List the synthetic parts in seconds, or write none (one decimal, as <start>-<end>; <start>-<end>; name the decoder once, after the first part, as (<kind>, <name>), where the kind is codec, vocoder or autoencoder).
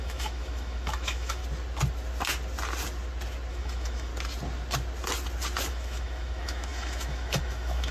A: 0.0-1.4 (autoencoder, DAC-VAE); 3.5-4.1; 5.7-7.9